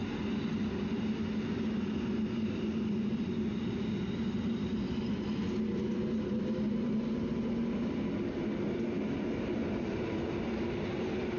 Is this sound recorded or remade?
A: recorded